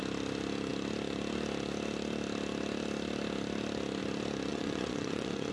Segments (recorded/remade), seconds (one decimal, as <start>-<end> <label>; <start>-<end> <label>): 0.0-4.5 recorded; 4.5-5.5 remade